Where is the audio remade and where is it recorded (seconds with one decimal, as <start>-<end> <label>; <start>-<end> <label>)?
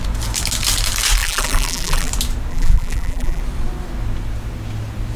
0.0-1.2 recorded; 1.2-2.1 remade; 2.1-2.5 recorded; 2.5-3.4 remade; 3.4-5.2 recorded